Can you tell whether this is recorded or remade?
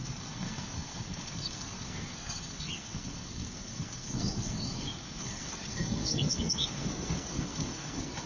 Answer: remade